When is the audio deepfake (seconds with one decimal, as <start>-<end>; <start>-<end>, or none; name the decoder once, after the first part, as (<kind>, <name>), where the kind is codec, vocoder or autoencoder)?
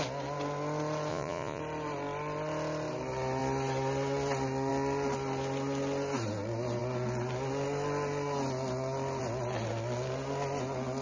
1.1-1.6 (vocoder, Vocos)